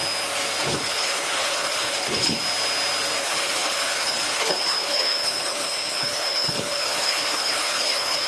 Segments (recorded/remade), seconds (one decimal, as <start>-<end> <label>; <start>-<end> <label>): 0.0-0.7 recorded; 0.7-2.4 remade; 2.4-3.2 recorded; 3.2-8.3 remade